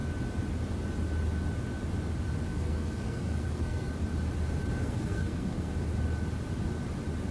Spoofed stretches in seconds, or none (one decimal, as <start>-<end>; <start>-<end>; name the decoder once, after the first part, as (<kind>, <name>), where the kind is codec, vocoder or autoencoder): 2.5-3.9 (codec, SNAC); 4.8-5.7